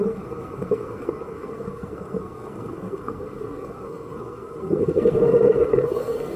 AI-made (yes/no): yes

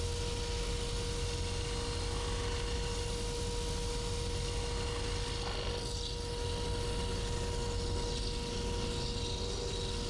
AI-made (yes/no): no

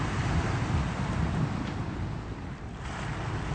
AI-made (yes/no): no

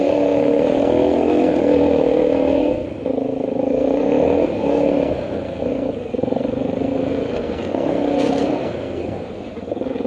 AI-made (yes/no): yes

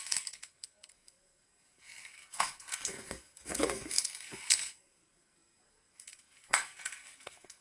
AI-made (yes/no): yes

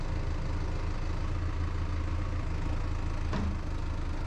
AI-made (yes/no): no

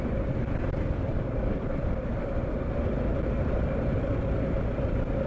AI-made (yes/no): no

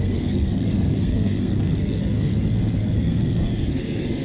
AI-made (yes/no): yes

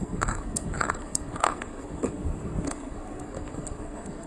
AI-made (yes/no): yes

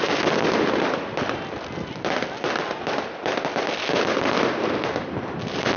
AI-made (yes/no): no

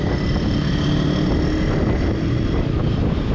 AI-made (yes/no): no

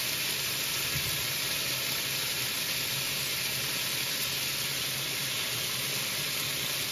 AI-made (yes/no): no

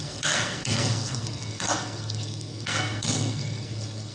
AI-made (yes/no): yes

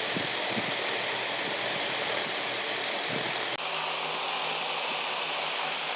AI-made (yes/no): no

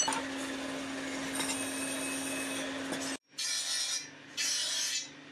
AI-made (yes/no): no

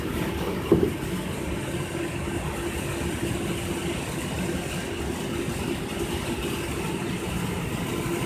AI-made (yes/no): no